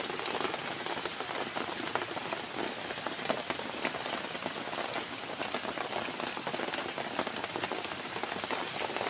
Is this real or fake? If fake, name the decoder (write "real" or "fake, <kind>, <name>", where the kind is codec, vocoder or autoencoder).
real